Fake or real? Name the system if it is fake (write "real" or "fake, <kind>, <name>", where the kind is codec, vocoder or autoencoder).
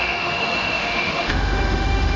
fake, autoencoder, DAC-VAE